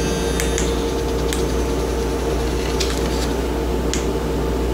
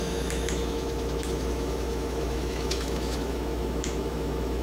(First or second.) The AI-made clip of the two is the second